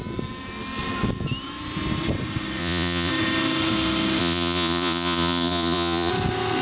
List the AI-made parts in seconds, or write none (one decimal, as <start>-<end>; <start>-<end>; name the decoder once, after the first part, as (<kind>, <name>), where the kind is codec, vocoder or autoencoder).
2.6-3.1 (vocoder, Vocos); 4.2-6.1